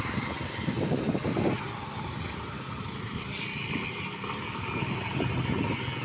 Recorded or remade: recorded